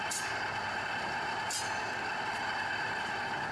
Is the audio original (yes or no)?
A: yes